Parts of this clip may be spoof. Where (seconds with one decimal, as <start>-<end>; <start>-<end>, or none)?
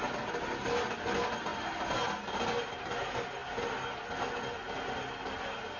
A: none